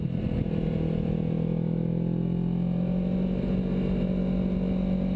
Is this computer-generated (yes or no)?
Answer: no